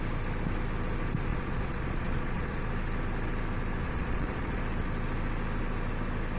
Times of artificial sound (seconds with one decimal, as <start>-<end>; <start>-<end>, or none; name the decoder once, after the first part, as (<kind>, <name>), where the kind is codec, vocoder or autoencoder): 1.3-2.6 (vocoder, Vocos); 3.8-4.6